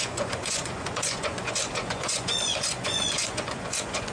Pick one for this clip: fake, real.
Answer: fake